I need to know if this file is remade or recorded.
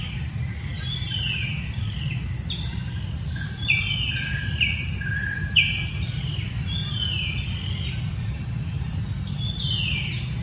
recorded